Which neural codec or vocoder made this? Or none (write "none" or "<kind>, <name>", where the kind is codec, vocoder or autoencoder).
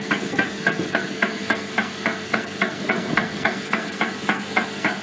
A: codec, SNAC